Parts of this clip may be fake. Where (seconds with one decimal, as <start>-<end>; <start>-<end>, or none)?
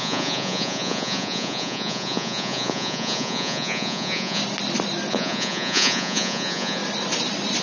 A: 0.0-4.4; 5.1-6.8